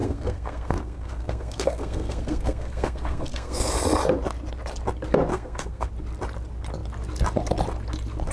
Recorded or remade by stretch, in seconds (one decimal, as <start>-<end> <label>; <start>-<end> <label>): 0.0-3.7 remade; 3.7-5.3 recorded; 5.3-5.9 remade; 5.9-8.3 recorded